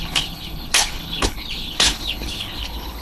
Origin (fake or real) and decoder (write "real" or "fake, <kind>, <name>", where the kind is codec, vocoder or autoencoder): fake, codec, HILCodec